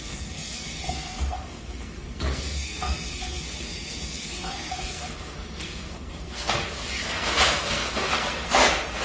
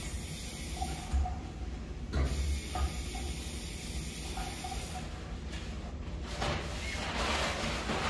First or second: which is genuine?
second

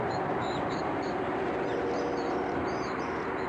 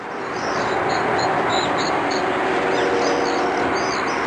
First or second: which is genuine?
second